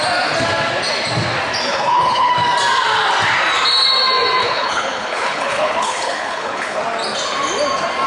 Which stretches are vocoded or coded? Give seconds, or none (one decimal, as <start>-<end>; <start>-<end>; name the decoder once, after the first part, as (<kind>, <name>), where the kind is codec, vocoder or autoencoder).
1.7-2.3 (codec, HILCodec); 4.4-6.8